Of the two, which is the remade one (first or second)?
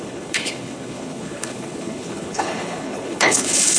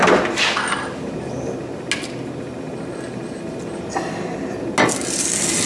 first